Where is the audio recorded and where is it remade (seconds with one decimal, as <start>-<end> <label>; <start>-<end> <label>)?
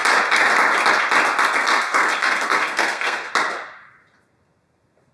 0.0-1.6 recorded; 1.6-3.3 remade; 3.3-5.1 recorded